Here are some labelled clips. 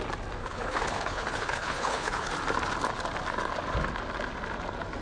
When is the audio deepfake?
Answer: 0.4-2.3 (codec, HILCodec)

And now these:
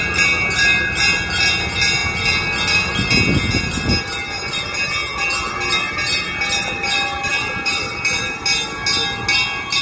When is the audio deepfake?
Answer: none

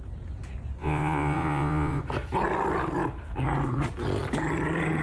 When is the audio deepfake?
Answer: 0.8-2.0 (vocoder, Vocos)

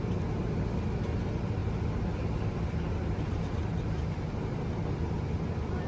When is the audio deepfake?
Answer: none

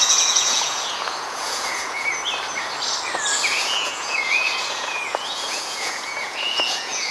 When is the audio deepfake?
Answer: 0.0-2.1 (vocoder, Vocos); 3.5-7.1